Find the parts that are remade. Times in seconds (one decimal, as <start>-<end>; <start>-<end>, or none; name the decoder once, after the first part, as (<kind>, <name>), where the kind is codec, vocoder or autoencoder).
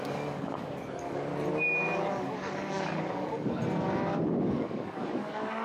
0.0-1.3 (codec, DAC); 2.1-3.6; 4.3-5.6